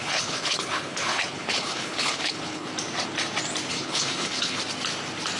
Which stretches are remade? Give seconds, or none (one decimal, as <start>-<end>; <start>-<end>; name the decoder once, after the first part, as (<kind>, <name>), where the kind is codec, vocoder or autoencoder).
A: 0.0-2.7 (codec, HILCodec); 3.7-4.6